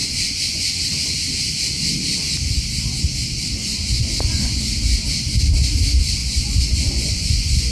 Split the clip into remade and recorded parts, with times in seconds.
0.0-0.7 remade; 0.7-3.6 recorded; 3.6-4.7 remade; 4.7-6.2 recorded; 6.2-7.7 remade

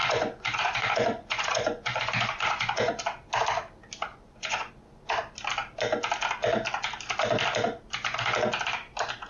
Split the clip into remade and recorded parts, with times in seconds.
0.0-2.9 remade; 2.9-4.1 recorded; 4.1-4.7 remade; 4.7-9.3 recorded

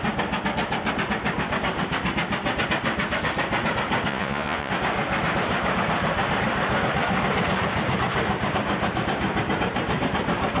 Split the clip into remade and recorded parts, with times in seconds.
0.0-4.1 recorded; 4.1-4.7 remade; 4.7-10.6 recorded

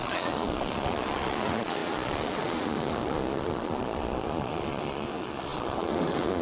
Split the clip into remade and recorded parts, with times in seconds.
0.0-6.4 remade